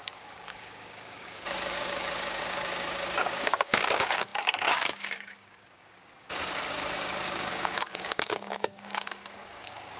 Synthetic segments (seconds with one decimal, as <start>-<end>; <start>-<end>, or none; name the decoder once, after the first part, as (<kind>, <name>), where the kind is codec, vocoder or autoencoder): 0.0-10.0 (codec, DAC)